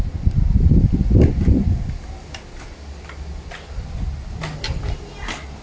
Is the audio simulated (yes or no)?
no